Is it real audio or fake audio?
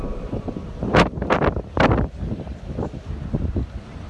fake